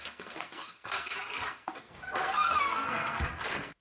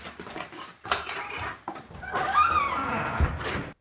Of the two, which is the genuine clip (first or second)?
second